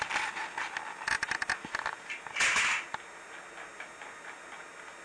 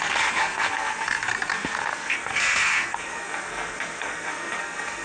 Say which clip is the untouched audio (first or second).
first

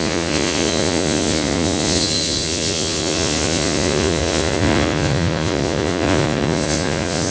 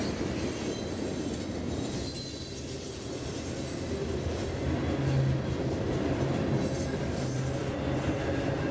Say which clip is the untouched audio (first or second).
second